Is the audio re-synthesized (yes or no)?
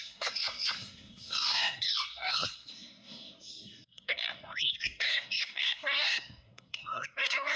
yes